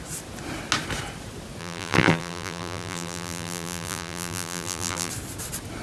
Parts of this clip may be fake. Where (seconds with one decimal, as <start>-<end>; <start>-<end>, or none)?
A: 1.6-5.1